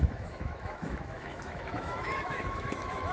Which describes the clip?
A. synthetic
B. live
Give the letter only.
A